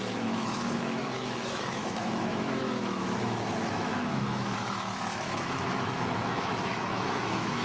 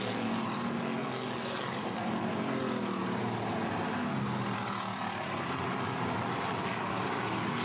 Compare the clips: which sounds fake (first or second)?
first